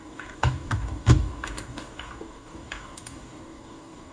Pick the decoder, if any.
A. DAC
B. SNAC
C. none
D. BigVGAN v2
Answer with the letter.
A